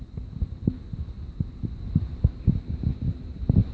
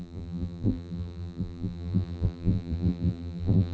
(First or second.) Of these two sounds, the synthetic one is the second